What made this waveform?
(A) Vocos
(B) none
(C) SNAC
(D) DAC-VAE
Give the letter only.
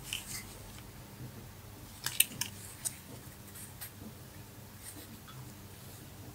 B